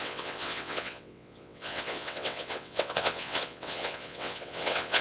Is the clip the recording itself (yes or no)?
no